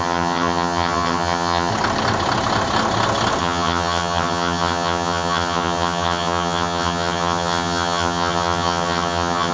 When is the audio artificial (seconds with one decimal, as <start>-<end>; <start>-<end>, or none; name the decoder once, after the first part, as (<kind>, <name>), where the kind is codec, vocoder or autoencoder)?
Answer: 0.0-1.7 (vocoder, HiFi-GAN); 3.4-9.5